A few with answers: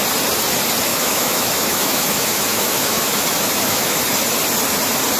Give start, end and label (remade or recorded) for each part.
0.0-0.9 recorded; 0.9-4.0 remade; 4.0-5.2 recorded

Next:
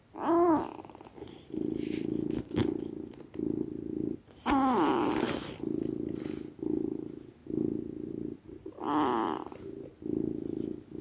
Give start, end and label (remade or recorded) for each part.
0.0-11.0 recorded

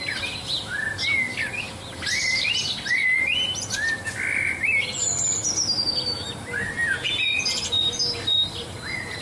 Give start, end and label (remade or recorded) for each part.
0.0-9.2 recorded

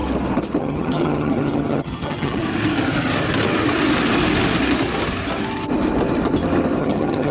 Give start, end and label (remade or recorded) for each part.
0.0-0.6 recorded; 0.6-2.4 remade; 2.4-6.8 recorded; 6.8-7.3 remade

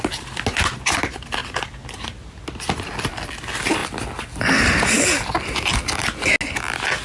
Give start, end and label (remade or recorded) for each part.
0.0-7.0 recorded